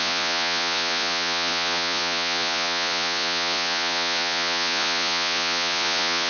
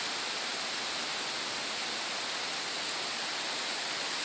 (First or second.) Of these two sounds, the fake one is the first